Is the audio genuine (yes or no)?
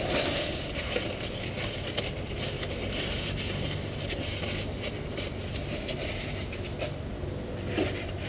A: yes